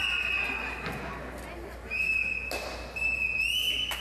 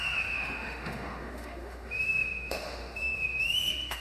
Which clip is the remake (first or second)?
second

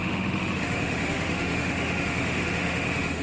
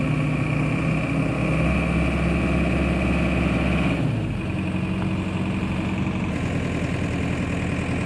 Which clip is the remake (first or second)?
first